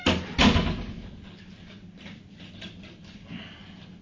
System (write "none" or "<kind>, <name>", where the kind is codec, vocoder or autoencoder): none